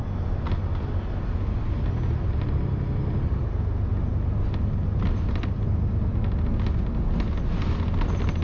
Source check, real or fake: real